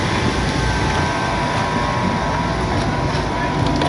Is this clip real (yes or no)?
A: yes